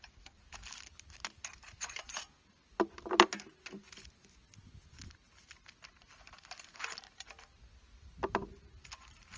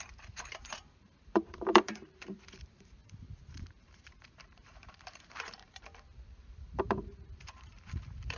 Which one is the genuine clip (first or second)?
first